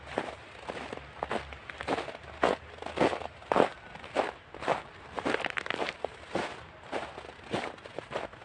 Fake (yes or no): no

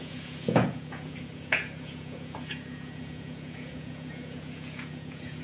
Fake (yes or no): yes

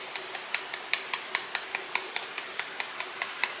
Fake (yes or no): no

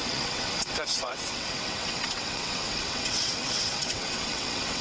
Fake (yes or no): yes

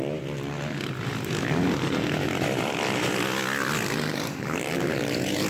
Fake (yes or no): no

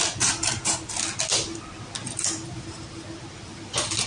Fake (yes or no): no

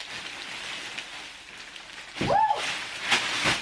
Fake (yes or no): no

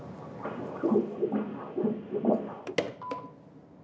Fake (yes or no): no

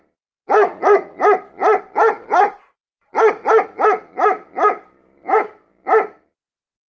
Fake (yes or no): no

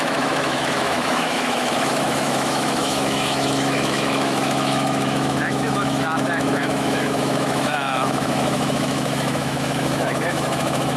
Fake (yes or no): yes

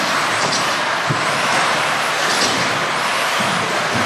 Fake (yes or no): yes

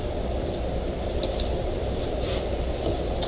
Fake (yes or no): no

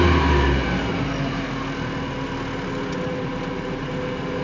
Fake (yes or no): no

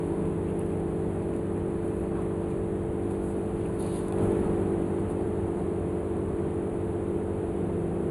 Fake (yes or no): no